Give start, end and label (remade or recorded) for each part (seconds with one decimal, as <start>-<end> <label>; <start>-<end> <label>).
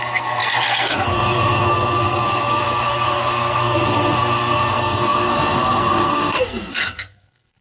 0.0-7.6 remade